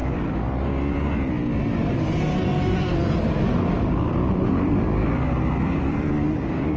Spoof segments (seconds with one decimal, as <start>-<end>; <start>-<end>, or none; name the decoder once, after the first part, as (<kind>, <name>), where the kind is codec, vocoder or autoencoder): 2.5-6.1 (vocoder, BigVGAN v2)